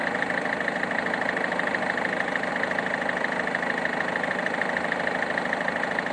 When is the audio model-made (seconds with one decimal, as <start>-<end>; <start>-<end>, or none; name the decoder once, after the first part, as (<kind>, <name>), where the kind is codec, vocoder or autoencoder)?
none